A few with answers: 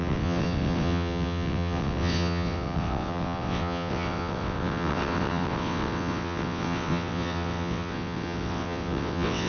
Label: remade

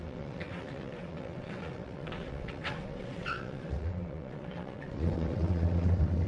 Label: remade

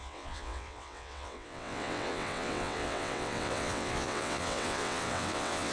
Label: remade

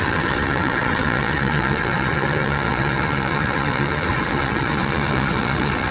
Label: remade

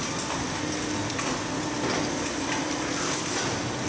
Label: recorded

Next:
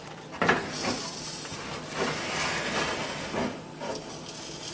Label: recorded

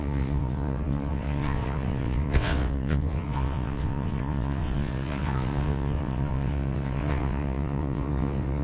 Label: remade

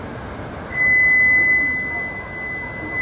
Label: recorded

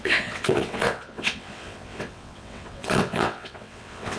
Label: remade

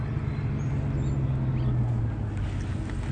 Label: recorded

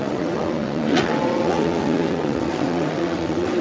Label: remade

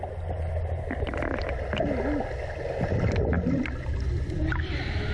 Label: recorded